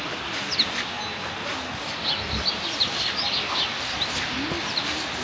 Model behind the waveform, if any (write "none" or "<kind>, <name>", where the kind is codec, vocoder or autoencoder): none